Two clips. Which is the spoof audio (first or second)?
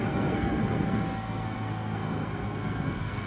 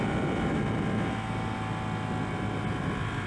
first